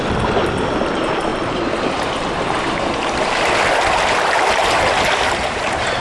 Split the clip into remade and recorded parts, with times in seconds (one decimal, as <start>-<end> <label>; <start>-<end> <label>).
0.0-6.0 recorded